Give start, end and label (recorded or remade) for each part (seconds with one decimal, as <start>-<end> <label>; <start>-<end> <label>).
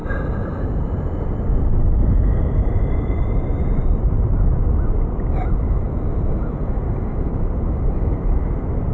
0.0-0.7 remade; 0.7-2.0 recorded; 2.0-3.3 remade; 3.3-6.8 recorded; 6.8-8.4 remade; 8.4-8.9 recorded